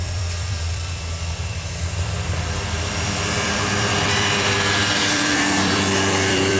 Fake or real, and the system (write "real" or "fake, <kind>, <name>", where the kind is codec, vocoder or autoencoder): fake, vocoder, BigVGAN v2